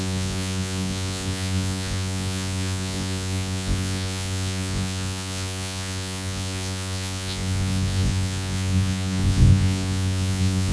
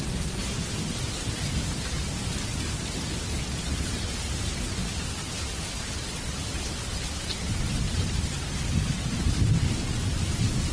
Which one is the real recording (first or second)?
second